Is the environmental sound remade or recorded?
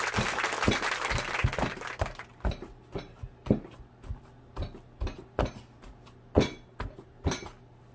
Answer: recorded